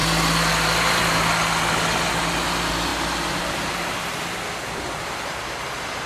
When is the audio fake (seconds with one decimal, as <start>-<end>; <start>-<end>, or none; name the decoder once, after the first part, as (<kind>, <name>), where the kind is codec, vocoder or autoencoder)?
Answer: none